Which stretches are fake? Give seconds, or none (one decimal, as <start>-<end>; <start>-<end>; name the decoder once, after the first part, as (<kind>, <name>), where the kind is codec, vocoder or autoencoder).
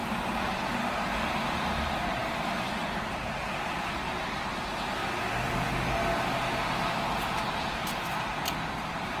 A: 2.2-3.9 (vocoder, BigVGAN v2); 5.0-5.7